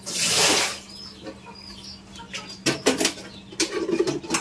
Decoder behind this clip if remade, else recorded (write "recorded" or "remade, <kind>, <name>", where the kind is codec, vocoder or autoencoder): recorded